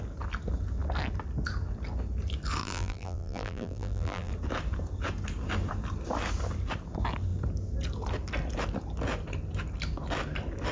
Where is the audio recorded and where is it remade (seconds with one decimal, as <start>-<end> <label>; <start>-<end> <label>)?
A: 0.0-2.6 recorded; 2.6-4.3 remade; 4.3-10.7 recorded